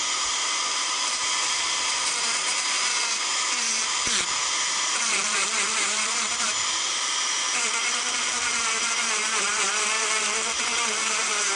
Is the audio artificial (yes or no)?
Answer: yes